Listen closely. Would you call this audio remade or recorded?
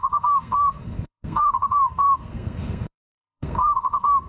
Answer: remade